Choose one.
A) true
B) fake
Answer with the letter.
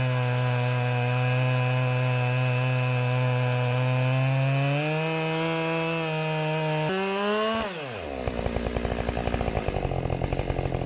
A